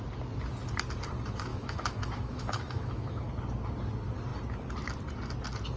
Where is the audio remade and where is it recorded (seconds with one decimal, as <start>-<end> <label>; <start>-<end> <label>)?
0.0-1.5 recorded; 1.5-3.3 remade; 3.3-5.8 recorded